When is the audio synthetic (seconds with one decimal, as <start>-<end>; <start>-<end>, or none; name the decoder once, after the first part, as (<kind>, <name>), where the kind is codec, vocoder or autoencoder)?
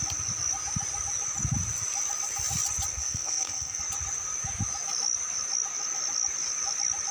2.9-3.8 (codec, SNAC)